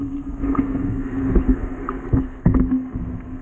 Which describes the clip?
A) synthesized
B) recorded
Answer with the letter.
A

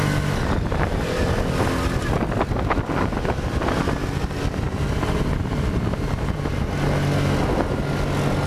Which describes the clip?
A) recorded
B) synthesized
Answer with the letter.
A